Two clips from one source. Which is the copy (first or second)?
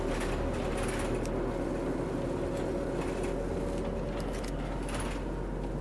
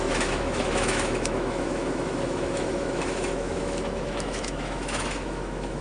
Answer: second